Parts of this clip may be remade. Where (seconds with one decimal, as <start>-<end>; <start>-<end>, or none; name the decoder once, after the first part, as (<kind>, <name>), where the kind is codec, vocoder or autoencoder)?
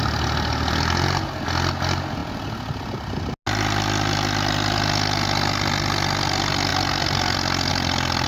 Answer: none